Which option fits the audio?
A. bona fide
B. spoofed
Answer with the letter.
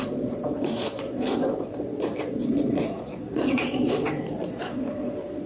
B